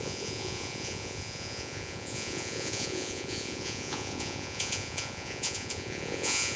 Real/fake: fake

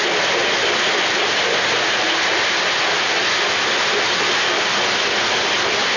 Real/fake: real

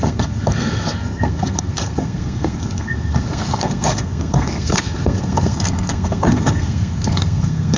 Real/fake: fake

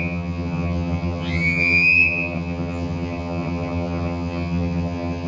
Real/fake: fake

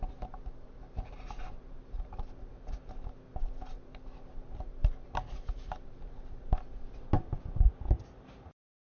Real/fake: real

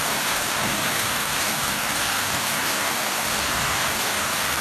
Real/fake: fake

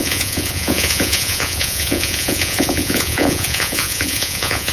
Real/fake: fake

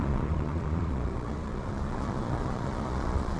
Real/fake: fake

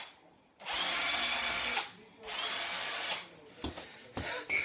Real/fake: real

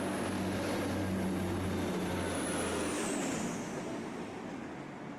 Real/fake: real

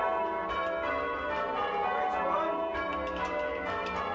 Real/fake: real